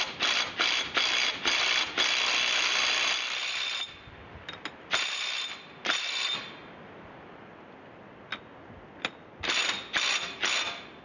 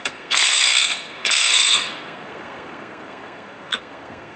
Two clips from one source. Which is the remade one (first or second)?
second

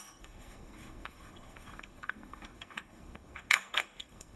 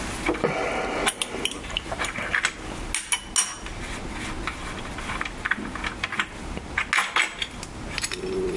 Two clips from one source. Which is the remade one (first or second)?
first